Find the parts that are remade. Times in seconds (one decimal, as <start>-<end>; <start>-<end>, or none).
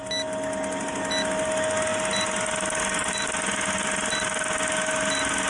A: none